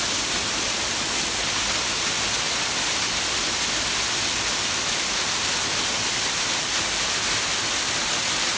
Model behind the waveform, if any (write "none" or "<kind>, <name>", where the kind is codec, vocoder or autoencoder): vocoder, BigVGAN v2